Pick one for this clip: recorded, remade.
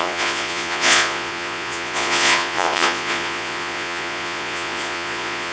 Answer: remade